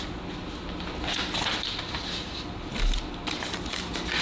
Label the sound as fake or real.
real